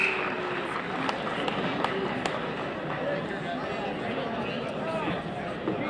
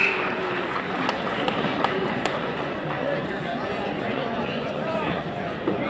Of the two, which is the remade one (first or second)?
second